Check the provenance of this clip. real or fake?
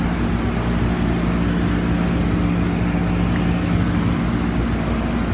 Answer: real